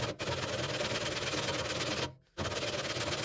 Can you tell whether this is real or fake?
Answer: real